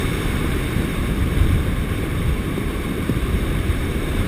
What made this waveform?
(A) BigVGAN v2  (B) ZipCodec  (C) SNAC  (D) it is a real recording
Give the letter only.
A